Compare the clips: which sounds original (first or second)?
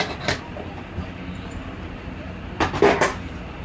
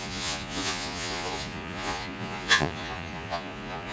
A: first